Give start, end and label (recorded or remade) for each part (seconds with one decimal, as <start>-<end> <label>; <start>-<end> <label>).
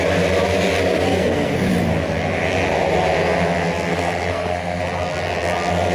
0.0-1.1 recorded; 1.1-1.7 remade; 1.7-3.9 recorded; 3.9-4.8 remade; 4.8-5.9 recorded